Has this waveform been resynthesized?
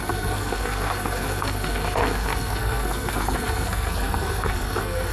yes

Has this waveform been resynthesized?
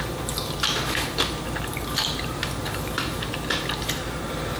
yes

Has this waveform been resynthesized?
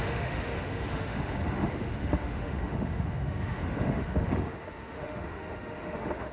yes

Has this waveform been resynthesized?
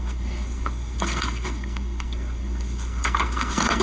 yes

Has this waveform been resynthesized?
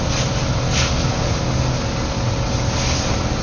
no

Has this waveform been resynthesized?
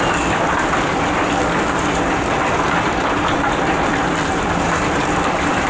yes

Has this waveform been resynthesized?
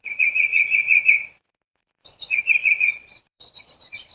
yes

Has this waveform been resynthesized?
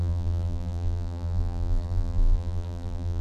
yes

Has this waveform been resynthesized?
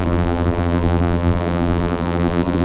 yes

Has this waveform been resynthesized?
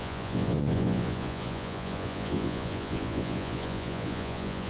yes